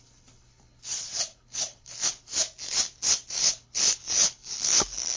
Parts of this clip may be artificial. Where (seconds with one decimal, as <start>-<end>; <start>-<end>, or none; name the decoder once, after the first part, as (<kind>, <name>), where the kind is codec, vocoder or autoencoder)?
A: 0.0-2.3 (codec, HILCodec); 3.4-4.7